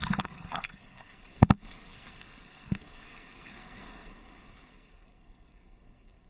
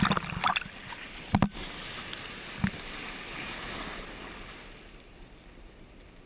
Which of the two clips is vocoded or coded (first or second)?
first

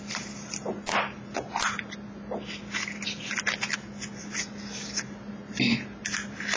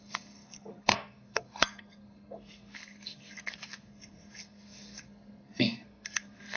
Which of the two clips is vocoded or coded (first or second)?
second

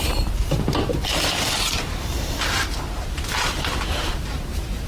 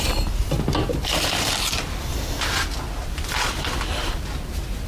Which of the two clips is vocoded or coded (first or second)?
first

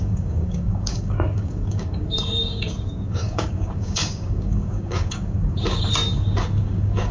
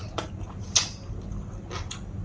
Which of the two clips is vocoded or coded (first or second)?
first